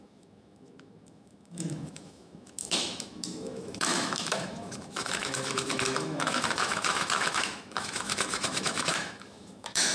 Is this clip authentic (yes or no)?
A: no